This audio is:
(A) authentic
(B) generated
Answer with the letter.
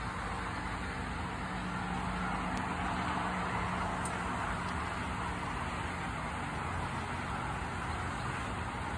A